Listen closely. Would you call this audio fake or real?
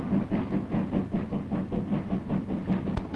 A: real